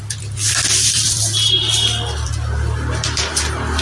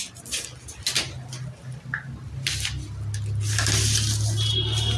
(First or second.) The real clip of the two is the second